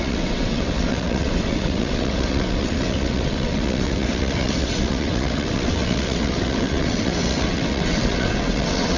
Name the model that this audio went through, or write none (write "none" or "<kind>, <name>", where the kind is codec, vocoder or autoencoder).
vocoder, WaveNeXt